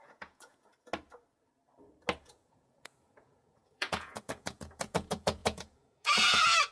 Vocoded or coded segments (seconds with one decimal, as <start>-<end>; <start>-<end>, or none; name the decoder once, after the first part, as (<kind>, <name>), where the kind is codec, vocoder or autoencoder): 0.0-0.7 (vocoder, Vocos); 2.2-6.7